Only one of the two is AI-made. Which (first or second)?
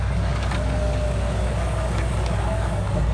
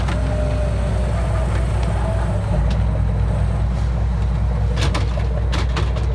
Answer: first